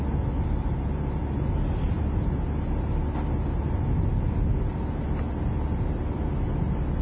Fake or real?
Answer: real